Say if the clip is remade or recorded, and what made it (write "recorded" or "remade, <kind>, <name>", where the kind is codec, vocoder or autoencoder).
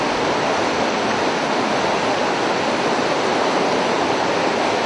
recorded